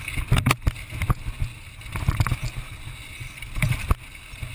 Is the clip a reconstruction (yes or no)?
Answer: no